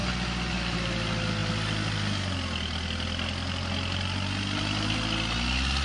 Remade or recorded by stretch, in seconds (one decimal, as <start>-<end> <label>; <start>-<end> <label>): 0.0-5.8 recorded